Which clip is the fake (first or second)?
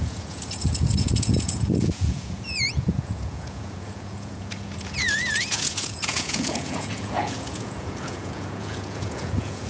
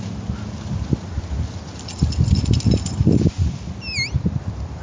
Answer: first